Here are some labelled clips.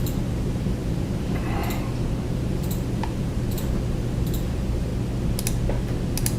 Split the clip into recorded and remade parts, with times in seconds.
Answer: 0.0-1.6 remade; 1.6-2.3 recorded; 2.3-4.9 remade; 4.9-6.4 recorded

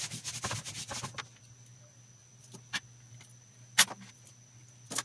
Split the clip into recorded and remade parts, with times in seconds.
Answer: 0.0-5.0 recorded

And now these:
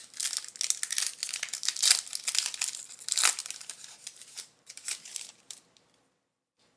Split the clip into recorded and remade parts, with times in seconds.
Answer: 0.0-3.4 recorded; 3.4-5.4 remade; 5.4-6.8 recorded

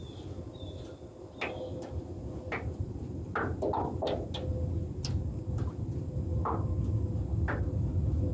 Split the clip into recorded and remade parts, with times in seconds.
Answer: 0.0-8.3 recorded